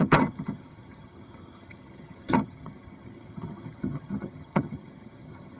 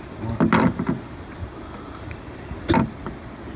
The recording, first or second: second